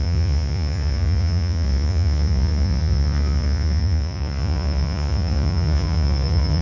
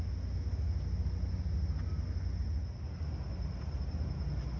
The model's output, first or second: first